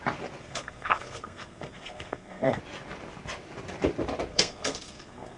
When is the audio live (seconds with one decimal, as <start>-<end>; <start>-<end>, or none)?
0.0-0.4; 2.6-4.3